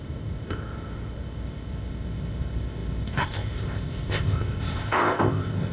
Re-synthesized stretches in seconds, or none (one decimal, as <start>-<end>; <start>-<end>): 0.0-5.7